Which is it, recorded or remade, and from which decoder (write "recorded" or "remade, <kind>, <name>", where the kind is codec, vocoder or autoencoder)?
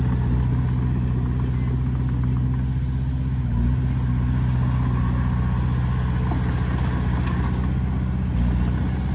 recorded